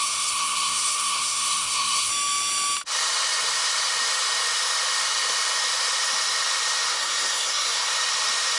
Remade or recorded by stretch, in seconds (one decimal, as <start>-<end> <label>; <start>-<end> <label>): 0.0-2.1 remade; 2.1-6.9 recorded; 6.9-7.9 remade; 7.9-8.6 recorded